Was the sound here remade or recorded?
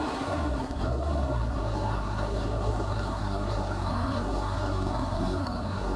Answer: remade